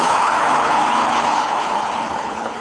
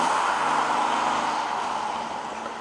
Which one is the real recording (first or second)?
second